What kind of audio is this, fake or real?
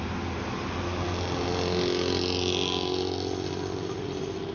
real